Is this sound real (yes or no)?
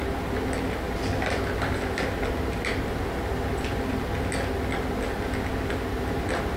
yes